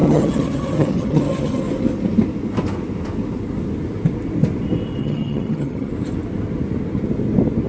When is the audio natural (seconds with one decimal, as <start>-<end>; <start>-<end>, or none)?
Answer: 1.6-5.0; 5.9-7.7